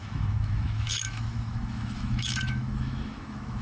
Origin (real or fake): fake